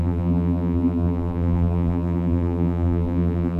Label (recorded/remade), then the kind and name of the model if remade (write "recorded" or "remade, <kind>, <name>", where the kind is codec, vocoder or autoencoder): remade, vocoder, BigVGAN v2